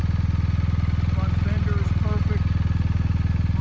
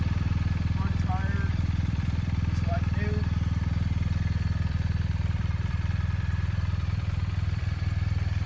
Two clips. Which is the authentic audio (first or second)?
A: first